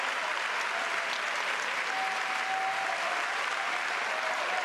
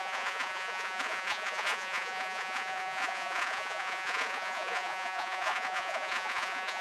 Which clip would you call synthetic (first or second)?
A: second